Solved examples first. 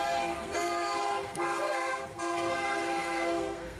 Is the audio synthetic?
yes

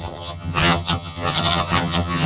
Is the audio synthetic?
yes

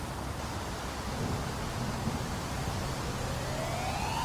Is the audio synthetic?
no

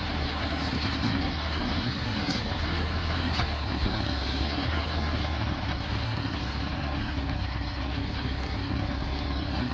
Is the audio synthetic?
yes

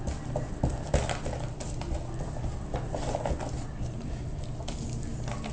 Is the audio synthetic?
no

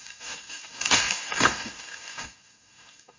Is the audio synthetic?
yes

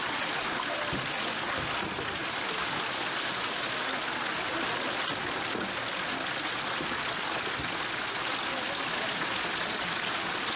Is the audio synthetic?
no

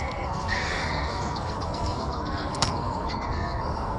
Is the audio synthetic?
yes